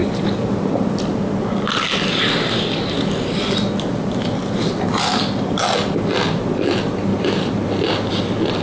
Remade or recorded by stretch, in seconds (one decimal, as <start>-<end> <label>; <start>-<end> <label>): 0.0-0.9 remade; 0.9-7.1 recorded; 7.1-7.7 remade; 7.7-8.6 recorded